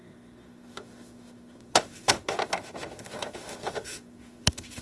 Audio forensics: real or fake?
fake